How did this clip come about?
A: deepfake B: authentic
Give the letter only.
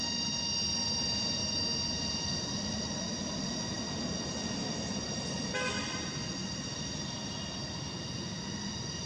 B